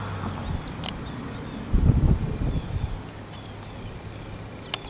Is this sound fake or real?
real